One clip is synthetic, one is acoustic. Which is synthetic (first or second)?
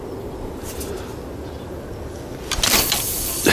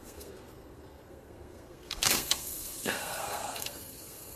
second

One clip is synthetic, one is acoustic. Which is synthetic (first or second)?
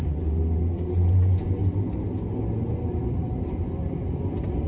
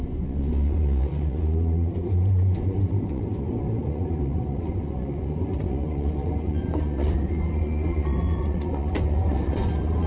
second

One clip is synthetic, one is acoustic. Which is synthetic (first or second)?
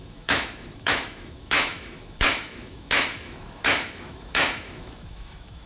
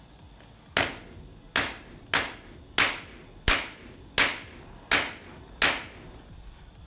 first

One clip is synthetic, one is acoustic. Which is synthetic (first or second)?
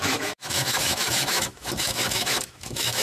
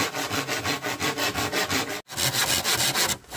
first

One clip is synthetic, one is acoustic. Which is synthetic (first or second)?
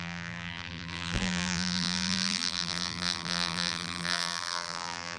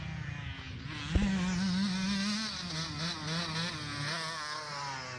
first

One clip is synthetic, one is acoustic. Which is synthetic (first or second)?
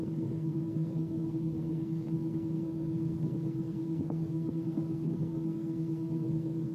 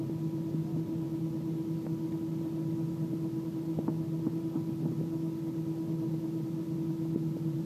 first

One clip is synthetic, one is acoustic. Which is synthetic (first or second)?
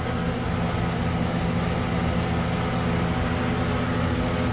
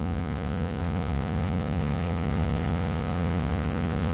second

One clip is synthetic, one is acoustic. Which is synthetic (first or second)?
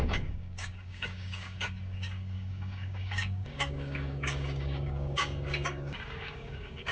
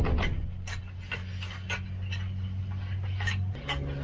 first